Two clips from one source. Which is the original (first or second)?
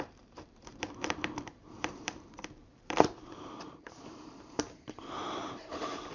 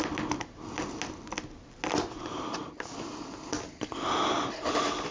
second